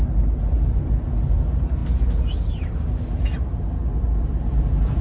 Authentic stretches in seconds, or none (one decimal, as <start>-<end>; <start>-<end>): 0.0-5.0